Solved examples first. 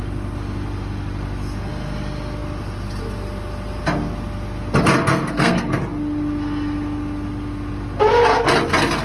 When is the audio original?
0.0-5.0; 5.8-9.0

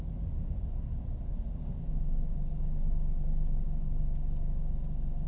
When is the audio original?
0.0-5.3